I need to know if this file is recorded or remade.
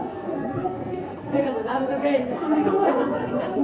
remade